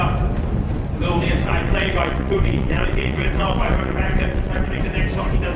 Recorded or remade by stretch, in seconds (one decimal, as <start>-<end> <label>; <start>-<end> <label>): 0.0-1.4 recorded; 1.4-4.8 remade; 4.8-5.6 recorded